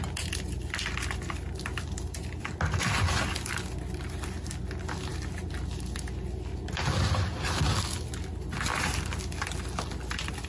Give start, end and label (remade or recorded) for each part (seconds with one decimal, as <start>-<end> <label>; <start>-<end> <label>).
0.0-10.5 recorded

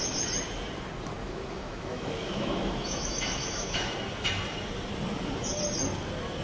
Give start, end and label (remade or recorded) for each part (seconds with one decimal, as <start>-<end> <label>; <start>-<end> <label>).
0.0-1.2 recorded; 1.2-3.9 remade; 3.9-6.4 recorded

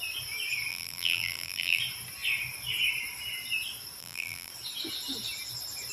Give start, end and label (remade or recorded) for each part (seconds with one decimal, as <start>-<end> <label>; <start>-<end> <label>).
0.0-0.7 recorded; 0.7-1.8 remade; 1.8-4.0 recorded; 4.0-4.5 remade; 4.5-5.9 recorded

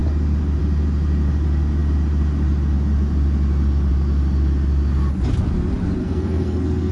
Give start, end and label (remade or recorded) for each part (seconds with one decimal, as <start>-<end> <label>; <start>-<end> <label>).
0.0-6.0 recorded; 6.0-6.9 remade

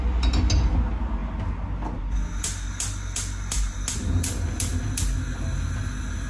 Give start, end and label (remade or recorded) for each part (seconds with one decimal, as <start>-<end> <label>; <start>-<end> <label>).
0.0-6.3 recorded